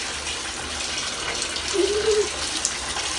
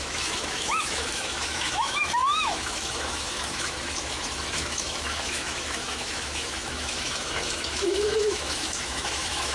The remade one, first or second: second